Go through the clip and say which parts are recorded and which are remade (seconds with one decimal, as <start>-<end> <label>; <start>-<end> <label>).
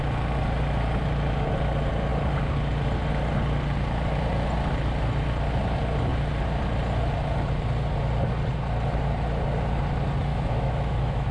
0.0-10.3 recorded; 10.3-11.3 remade